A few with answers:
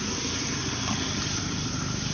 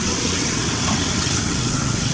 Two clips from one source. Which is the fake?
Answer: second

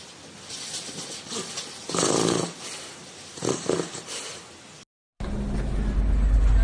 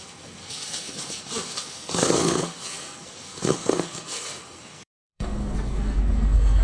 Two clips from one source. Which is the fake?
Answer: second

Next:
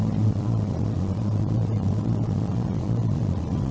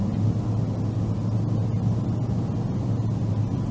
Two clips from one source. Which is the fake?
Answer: first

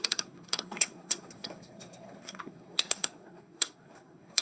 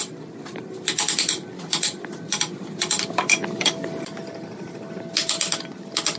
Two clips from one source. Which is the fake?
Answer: first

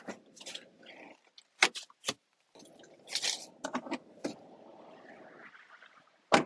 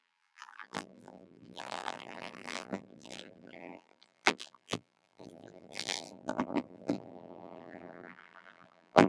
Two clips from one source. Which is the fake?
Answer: second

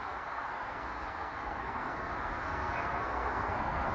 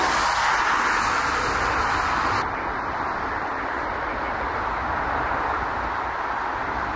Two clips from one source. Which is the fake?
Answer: first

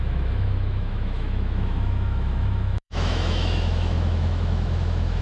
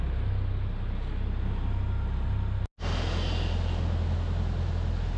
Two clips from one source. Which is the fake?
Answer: first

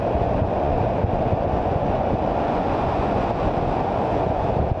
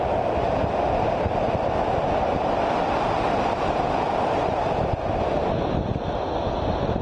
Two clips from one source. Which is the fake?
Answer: first